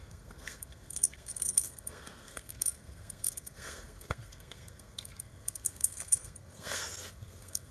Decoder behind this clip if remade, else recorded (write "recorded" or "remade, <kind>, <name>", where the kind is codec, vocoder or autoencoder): remade, codec, SNAC